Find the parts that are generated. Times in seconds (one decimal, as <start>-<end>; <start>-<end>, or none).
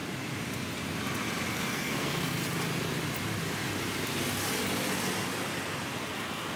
1.5-2.4; 6.0-6.6